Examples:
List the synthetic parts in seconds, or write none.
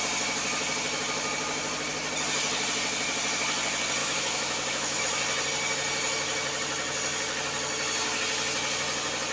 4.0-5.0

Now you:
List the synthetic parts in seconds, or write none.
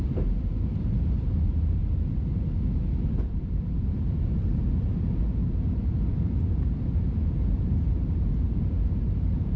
0.0-1.8; 3.0-9.6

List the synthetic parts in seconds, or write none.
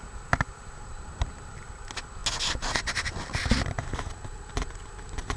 none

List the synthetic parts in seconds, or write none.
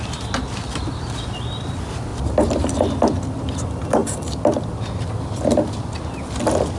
2.1-2.7; 4.0-5.8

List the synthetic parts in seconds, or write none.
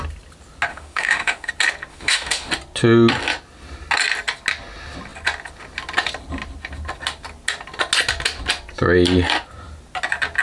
0.7-1.5; 1.9-2.5